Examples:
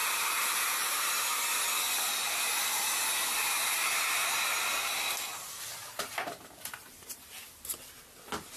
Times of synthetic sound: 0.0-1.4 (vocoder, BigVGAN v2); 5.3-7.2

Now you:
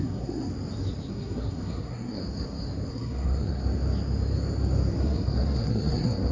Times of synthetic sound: 0.0-0.5 (codec, SNAC); 1.1-2.2; 2.9-3.6; 5.0-6.3

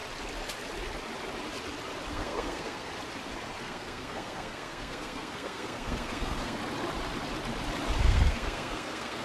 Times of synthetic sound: 2.1-2.9 (codec, SNAC); 3.6-6.6; 8.0-9.2

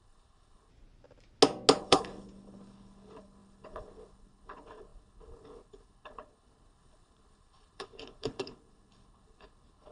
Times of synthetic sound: 0.0-0.7 (codec, HILCodec); 1.8-9.9

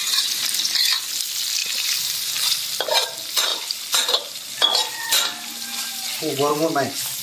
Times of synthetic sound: 0.4-0.9 (vocoder, BigVGAN v2); 1.6-2.8; 3.5-6.3

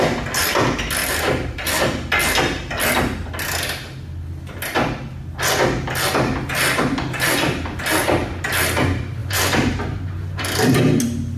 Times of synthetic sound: 1.0-1.8 (vocoder, BigVGAN v2); 9.2-10.7

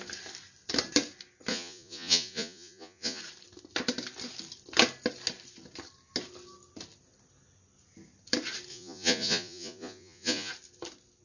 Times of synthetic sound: 1.5-3.2 (vocoder, Vocos); 8.7-10.5

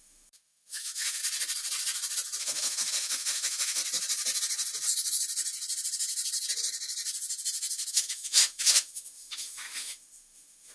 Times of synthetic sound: 0.0-1.2 (autoencoder, DAC-VAE); 2.4-3.8; 7.9-10.7